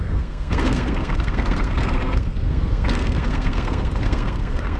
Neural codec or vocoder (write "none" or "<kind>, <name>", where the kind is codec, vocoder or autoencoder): codec, SNAC